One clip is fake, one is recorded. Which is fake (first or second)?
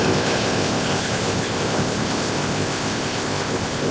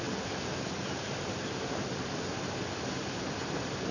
first